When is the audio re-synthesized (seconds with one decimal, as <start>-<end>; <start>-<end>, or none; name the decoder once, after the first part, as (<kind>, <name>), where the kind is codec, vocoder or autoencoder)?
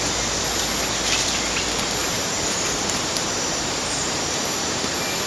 2.0-4.8 (vocoder, BigVGAN v2)